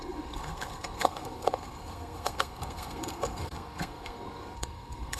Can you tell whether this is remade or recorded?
remade